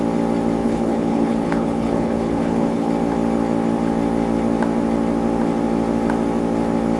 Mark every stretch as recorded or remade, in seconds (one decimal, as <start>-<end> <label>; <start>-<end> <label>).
0.0-0.6 recorded; 0.6-2.9 remade; 2.9-7.0 recorded